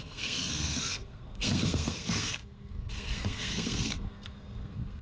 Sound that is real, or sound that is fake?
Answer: fake